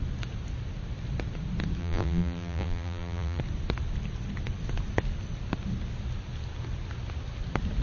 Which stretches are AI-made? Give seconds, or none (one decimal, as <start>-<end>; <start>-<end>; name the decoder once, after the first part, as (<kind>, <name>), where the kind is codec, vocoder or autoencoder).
1.8-3.4 (vocoder, BigVGAN v2)